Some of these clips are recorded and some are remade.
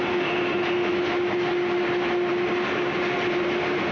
recorded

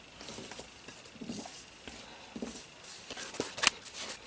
recorded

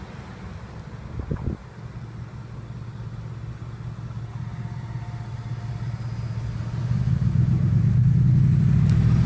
recorded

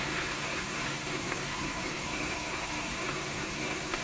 remade